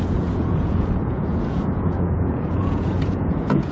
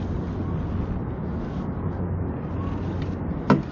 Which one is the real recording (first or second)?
second